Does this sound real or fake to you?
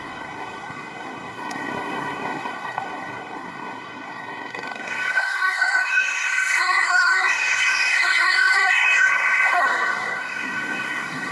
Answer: fake